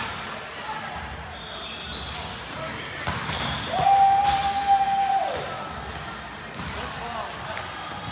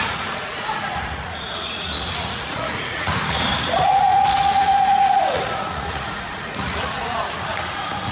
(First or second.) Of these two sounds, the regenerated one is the second